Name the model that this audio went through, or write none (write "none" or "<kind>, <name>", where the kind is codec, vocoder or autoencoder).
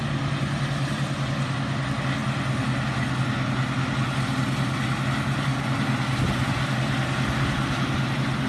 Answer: none